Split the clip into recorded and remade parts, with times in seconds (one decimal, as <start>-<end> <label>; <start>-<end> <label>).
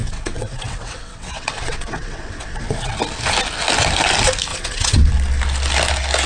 0.0-2.9 remade; 2.9-4.5 recorded; 4.5-5.1 remade; 5.1-6.3 recorded